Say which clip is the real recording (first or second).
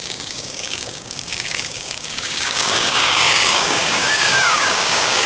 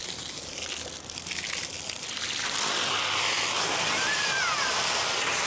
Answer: second